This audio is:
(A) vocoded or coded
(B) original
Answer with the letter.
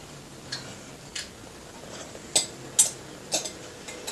B